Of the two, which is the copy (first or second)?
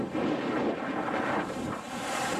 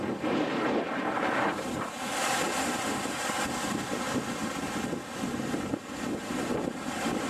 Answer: first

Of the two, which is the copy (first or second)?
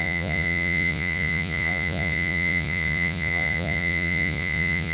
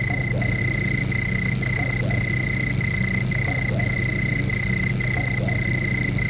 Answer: first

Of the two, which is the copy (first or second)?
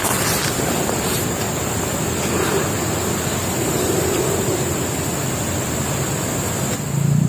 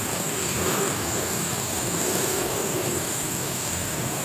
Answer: second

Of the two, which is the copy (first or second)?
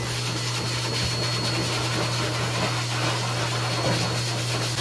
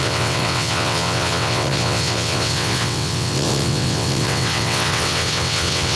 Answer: second